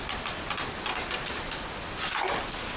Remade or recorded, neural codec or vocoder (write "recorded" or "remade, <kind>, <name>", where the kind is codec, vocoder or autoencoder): recorded